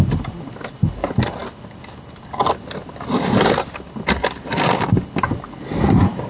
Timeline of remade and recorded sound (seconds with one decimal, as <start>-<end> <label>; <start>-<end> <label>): 0.0-6.3 recorded